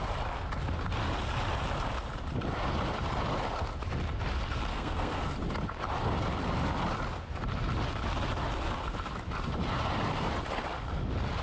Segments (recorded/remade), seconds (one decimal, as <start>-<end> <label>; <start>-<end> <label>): 0.0-4.7 recorded; 4.7-5.2 remade; 5.2-11.4 recorded